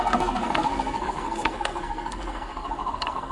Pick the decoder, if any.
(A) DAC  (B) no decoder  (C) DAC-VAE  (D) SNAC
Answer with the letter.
D